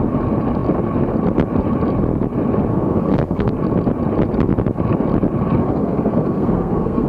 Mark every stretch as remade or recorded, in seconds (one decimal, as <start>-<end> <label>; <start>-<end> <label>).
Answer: 0.0-2.7 recorded; 2.7-3.5 remade; 3.5-5.6 recorded; 5.6-7.1 remade